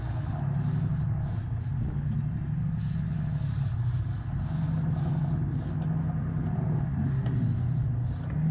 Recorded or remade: recorded